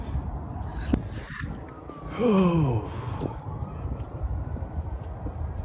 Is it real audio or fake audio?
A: real